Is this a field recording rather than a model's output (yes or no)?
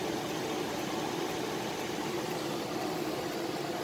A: yes